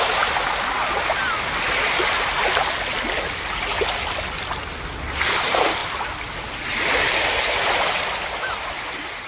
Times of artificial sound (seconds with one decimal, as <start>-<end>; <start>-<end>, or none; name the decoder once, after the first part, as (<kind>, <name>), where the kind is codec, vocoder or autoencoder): none

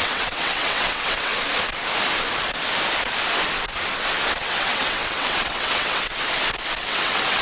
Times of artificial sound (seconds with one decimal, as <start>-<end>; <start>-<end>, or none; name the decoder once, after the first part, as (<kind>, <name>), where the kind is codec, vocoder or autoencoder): 0.0-1.3 (vocoder, WaveNeXt); 4.3-6.1; 6.8-7.4

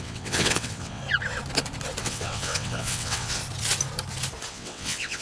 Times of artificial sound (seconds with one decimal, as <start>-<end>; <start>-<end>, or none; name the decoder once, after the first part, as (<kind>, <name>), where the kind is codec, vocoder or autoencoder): 0.0-1.0 (vocoder, WaveNeXt); 2.0-3.4; 4.5-5.2

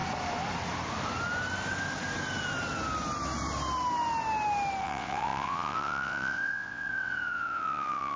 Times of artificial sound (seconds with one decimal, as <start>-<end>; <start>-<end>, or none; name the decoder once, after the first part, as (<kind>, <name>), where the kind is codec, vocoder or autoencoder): 4.8-8.2 (vocoder, WaveNeXt)

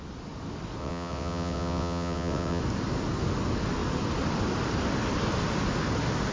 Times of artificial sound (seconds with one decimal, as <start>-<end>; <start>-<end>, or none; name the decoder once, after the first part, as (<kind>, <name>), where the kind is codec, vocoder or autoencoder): 0.8-2.6 (vocoder, WaveNeXt)

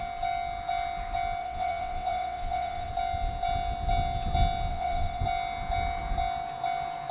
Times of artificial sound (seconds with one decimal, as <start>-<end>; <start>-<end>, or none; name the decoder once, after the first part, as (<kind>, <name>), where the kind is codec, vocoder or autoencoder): 1.4-2.9 (vocoder, WaveNeXt); 4.7-5.2